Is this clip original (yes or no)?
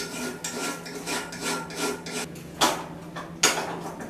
yes